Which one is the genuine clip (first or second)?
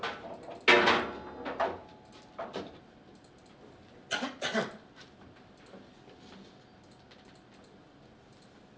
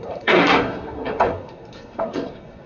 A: first